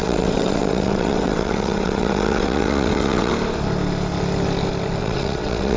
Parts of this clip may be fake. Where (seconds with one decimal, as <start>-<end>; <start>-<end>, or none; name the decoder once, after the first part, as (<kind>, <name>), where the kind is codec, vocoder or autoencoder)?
0.0-3.3 (vocoder, WaveNeXt); 5.0-5.8